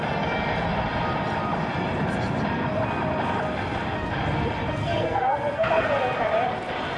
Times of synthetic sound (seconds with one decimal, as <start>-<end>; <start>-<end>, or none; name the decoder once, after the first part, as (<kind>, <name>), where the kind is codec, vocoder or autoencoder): 4.8-5.9 (codec, SNAC)